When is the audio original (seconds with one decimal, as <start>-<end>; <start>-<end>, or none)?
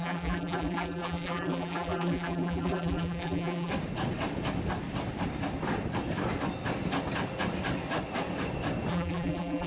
3.7-8.9